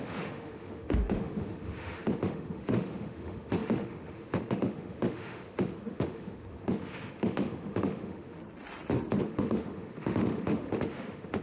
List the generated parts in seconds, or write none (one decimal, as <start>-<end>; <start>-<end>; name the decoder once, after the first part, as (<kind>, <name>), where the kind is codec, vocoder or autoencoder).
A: 0.0-8.4 (autoencoder, DAC-VAE); 9.2-11.4